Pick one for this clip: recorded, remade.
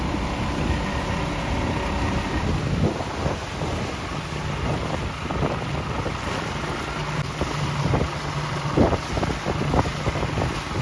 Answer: recorded